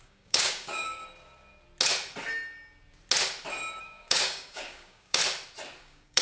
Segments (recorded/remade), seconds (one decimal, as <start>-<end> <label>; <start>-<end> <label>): 0.0-1.0 remade; 1.0-3.8 recorded; 3.8-5.2 remade; 5.2-5.8 recorded; 5.8-6.2 remade